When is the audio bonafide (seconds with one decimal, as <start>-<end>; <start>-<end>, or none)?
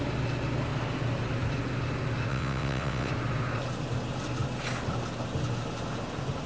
0.0-2.3; 3.1-6.5